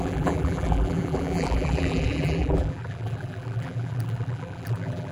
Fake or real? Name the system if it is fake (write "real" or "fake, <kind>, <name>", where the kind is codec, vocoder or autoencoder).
fake, vocoder, BigVGAN v2